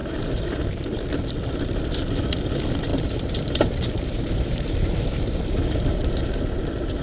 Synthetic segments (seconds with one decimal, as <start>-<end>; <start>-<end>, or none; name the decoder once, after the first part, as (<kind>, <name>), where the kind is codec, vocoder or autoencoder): 0.0-0.7 (vocoder, BigVGAN v2); 2.9-6.4

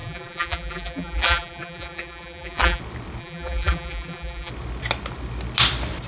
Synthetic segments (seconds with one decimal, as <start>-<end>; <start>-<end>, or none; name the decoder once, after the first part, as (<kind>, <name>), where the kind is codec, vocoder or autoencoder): 0.0-2.8 (vocoder, BigVGAN v2); 3.2-4.5

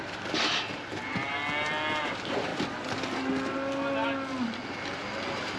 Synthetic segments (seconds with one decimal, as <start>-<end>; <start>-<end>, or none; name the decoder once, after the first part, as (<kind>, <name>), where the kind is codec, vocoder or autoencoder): 0.0-1.4 (vocoder, BigVGAN v2); 2.0-2.5; 4.7-5.6

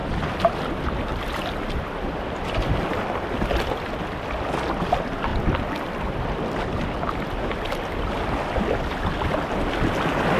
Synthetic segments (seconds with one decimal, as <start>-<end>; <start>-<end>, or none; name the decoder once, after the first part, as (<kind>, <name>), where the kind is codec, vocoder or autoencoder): 0.0-0.5 (vocoder, BigVGAN v2); 1.1-2.8; 5.3-6.0